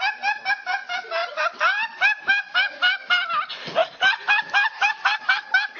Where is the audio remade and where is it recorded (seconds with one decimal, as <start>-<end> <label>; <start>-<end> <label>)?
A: 0.0-1.2 recorded; 1.2-3.4 remade; 3.4-3.8 recorded; 3.8-4.9 remade; 4.9-5.8 recorded

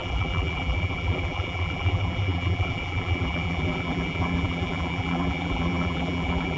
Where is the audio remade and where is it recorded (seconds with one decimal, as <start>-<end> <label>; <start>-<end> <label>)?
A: 0.0-6.6 remade

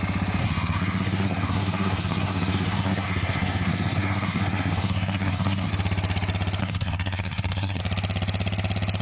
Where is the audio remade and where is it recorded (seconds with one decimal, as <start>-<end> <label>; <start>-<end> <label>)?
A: 0.0-0.4 recorded; 0.4-5.7 remade; 5.7-6.6 recorded; 6.6-7.8 remade; 7.8-9.0 recorded